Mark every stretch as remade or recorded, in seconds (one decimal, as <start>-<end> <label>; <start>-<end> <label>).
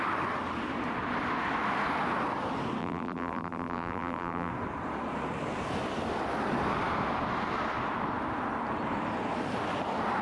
0.0-2.8 recorded; 2.8-4.5 remade; 4.5-10.2 recorded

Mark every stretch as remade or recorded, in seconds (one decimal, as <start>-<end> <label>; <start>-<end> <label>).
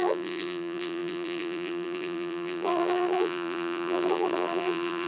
0.0-5.1 remade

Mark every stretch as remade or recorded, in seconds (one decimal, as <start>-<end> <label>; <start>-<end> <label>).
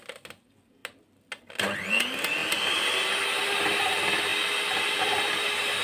0.0-5.8 recorded